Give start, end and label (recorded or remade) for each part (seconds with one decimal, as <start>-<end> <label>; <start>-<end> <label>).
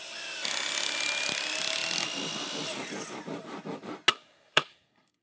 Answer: 0.0-4.1 recorded; 4.1-5.2 remade